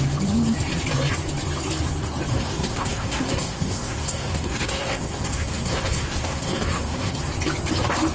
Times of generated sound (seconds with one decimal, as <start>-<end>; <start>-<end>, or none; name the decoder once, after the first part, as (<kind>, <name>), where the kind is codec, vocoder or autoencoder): 2.3-7.2 (codec, SNAC)